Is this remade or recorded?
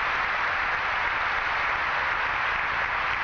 recorded